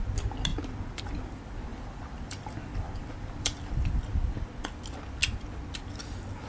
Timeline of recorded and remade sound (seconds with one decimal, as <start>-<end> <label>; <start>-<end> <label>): 0.0-0.5 recorded; 0.5-1.0 remade; 1.0-1.7 recorded; 1.7-4.5 remade; 4.5-6.5 recorded